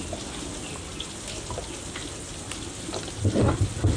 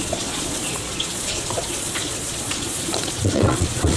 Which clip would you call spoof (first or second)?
second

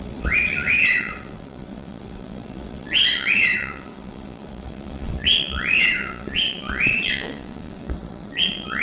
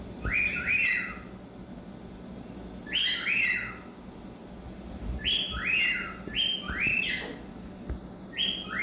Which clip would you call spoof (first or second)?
first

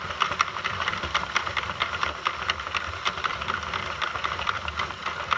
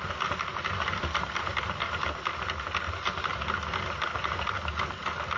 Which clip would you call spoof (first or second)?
first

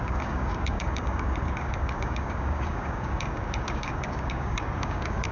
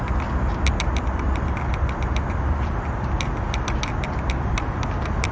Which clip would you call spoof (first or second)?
first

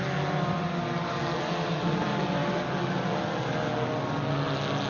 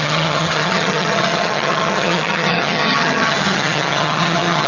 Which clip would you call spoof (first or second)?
second